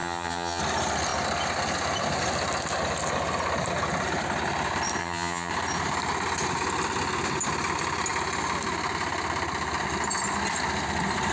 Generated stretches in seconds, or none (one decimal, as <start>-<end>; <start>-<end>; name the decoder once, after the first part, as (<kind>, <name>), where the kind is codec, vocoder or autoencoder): 0.0-0.6 (vocoder, HiFi-GAN); 5.0-5.5